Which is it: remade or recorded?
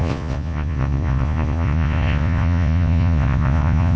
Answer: remade